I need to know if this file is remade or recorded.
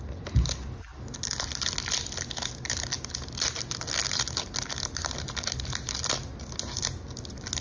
recorded